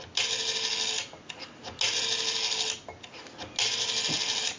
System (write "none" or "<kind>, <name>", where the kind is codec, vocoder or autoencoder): none